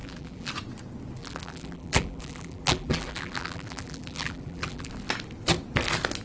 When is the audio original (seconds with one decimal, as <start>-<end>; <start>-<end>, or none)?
0.5-1.2; 4.9-6.2